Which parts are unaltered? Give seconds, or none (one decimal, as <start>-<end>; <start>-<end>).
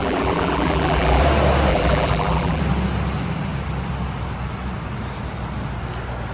1.2-1.7; 2.6-6.3